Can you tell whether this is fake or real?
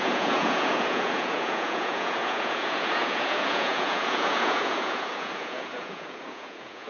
fake